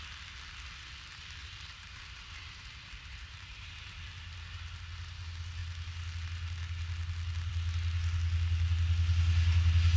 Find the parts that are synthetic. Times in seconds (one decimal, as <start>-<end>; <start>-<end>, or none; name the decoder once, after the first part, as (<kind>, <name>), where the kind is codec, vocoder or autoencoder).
1.4-3.8 (vocoder, BigVGAN v2)

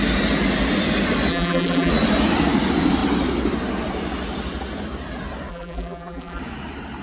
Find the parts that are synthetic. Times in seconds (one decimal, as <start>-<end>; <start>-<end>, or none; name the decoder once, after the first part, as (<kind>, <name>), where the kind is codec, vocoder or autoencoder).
1.3-1.9 (vocoder, BigVGAN v2); 5.5-6.4

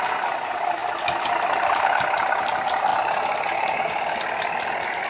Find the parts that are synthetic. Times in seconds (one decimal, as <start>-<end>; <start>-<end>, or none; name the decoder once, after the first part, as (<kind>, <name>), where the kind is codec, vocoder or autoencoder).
0.0-5.1 (vocoder, BigVGAN v2)

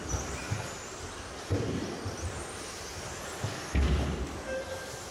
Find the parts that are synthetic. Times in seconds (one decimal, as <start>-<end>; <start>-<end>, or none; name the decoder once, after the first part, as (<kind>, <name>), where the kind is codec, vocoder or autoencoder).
none

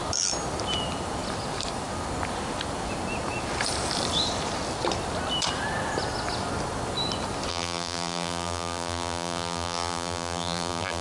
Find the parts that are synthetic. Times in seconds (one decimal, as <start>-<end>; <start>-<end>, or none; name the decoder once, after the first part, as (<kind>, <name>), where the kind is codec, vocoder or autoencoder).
7.5-11.0 (vocoder, BigVGAN v2)

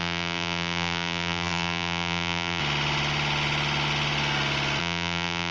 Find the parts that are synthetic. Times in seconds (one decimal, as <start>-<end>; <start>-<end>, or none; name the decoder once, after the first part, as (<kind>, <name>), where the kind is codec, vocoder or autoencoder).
0.0-2.6 (vocoder, BigVGAN v2); 4.8-5.5

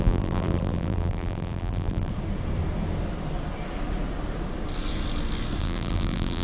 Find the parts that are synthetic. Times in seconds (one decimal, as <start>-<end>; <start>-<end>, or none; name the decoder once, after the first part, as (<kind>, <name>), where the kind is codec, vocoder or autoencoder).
0.0-2.1 (vocoder, BigVGAN v2); 5.6-6.4

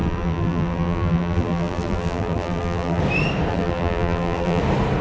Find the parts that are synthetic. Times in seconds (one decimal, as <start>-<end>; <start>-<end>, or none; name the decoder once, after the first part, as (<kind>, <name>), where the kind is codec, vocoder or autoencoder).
0.0-3.0 (vocoder, BigVGAN v2); 3.5-4.6